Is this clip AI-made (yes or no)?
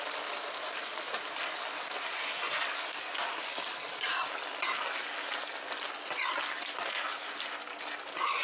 no